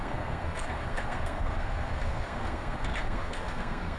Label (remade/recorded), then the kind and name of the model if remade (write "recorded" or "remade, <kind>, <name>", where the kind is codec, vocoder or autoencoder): remade, codec, SNAC